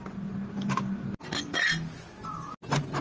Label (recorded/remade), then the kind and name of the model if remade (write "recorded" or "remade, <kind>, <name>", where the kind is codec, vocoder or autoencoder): recorded